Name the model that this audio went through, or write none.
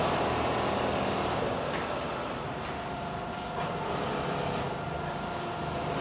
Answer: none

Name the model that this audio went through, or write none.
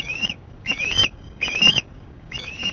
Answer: codec, DAC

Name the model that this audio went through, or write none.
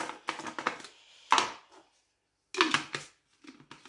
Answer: none